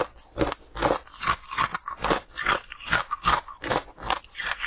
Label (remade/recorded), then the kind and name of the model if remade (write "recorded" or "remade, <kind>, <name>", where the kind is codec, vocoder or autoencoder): recorded